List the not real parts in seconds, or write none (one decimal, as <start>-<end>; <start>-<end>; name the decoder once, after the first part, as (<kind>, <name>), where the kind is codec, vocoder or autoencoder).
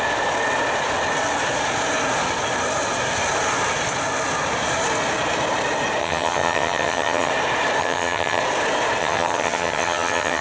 6.0-7.3 (vocoder, HiFi-GAN); 7.8-8.4; 9.0-10.4